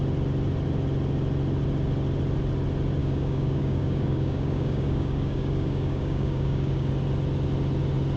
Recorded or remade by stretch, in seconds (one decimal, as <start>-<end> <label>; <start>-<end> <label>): 0.0-3.0 recorded; 3.0-6.9 remade; 6.9-8.2 recorded